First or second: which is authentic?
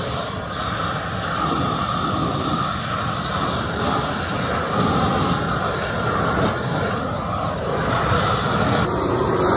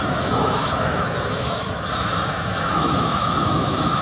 first